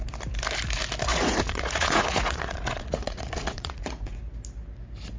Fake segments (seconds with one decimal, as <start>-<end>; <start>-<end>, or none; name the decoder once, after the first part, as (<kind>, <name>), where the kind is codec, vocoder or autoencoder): 1.1-4.2 (vocoder, Vocos)